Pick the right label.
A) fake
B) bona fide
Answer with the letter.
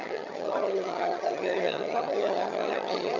A